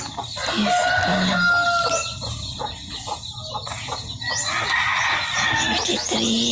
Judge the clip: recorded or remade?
recorded